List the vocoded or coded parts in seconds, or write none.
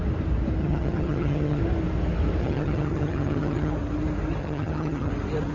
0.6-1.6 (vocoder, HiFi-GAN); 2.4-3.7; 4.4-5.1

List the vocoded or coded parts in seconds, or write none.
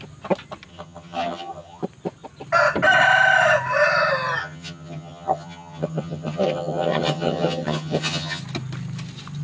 0.7-1.8 (vocoder, HiFi-GAN); 4.4-8.4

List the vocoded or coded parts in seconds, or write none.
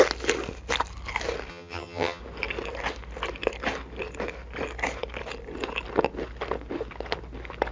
1.5-2.2 (vocoder, HiFi-GAN)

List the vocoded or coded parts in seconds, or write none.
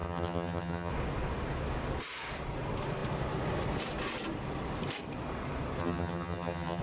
0.0-0.9 (vocoder, HiFi-GAN); 5.8-6.8